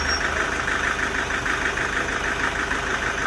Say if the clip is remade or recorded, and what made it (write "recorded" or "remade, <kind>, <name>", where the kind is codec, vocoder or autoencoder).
recorded